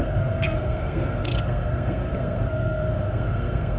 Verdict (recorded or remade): remade